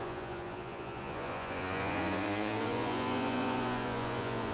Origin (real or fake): fake